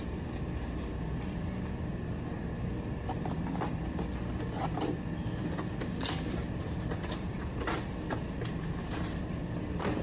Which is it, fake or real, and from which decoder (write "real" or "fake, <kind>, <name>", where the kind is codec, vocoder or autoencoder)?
real